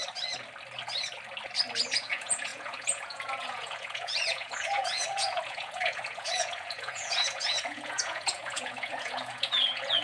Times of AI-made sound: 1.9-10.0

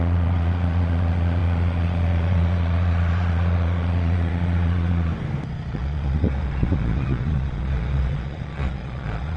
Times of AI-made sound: 0.0-5.1; 5.7-9.4

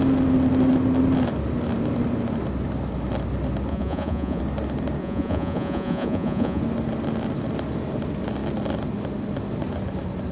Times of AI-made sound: 3.7-4.4; 5.0-6.6

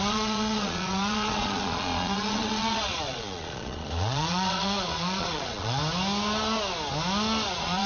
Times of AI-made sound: 0.0-5.8; 7.5-7.9

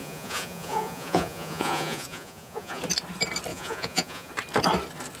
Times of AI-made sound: 0.0-2.8; 3.5-4.3

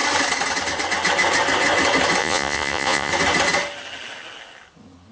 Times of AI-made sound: 2.2-3.1

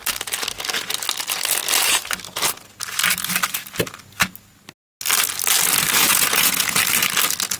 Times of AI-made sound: 6.1-6.8